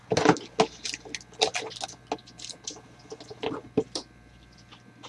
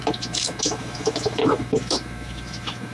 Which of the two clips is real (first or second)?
first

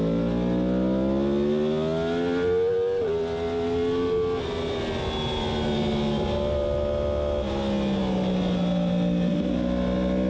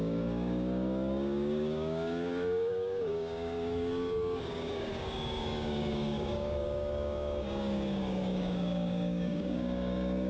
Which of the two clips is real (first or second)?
first